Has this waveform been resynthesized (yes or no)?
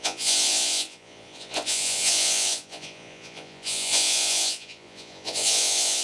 yes